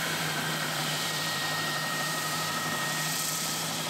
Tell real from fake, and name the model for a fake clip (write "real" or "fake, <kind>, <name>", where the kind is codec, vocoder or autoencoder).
fake, vocoder, BigVGAN v2